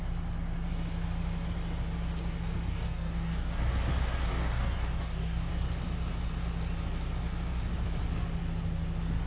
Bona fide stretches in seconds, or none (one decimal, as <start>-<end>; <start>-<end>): 0.0-2.7; 3.5-4.3; 5.5-9.3